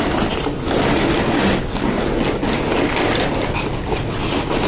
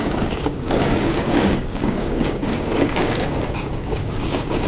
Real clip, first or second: first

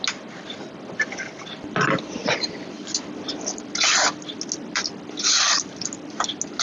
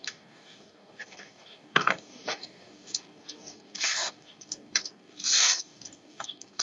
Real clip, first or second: first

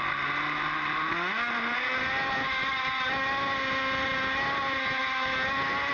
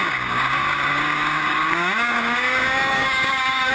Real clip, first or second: first